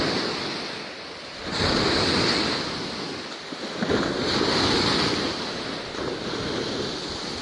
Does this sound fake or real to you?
real